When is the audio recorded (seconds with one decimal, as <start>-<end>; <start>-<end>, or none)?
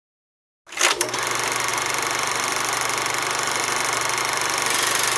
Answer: 0.0-5.2